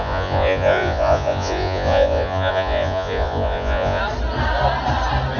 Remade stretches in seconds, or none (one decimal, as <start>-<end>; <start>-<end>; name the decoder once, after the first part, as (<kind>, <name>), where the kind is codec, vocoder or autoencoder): 0.0-4.0 (vocoder, Vocos)